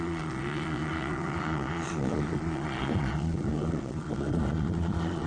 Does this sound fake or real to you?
fake